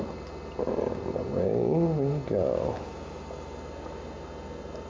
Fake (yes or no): no